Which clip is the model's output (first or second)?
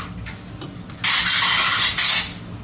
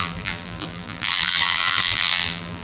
second